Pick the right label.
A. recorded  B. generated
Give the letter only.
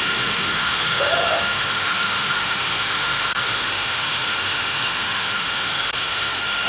B